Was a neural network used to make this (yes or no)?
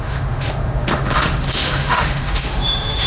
yes